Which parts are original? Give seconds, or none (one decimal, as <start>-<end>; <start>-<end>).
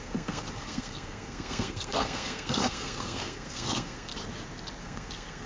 4.1-4.8